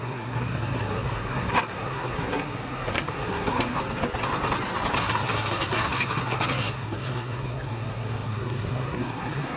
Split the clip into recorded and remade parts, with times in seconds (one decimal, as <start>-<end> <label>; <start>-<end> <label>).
0.0-3.8 remade; 3.8-5.0 recorded; 5.0-9.6 remade